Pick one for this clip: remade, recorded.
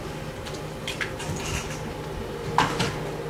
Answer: recorded